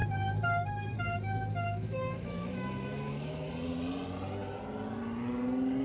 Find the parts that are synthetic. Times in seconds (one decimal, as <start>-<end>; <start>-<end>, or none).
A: 0.0-3.5

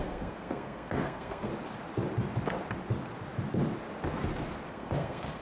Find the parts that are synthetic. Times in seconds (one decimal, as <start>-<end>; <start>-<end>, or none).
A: 0.0-1.5; 4.7-5.4